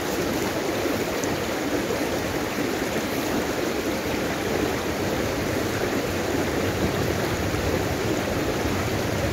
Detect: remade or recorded remade